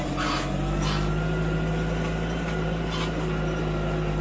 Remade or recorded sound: recorded